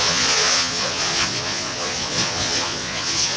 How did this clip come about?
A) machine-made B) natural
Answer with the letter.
A